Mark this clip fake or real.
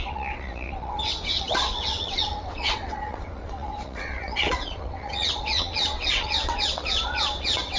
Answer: fake